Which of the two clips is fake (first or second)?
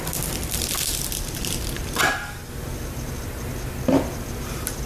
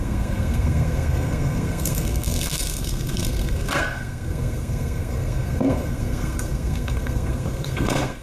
second